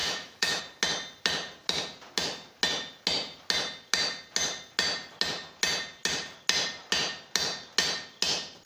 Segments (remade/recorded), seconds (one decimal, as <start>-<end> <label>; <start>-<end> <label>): 0.0-0.6 remade; 0.6-8.7 recorded